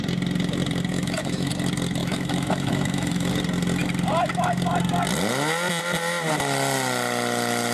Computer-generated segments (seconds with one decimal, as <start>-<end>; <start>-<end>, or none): 0.9-1.5; 2.0-3.3